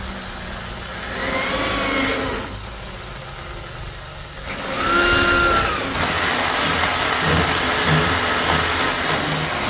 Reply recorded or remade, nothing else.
recorded